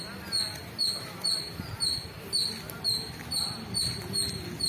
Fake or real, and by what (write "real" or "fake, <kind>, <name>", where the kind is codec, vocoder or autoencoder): real